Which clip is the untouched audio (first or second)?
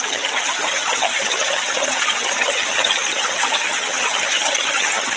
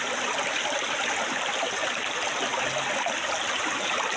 second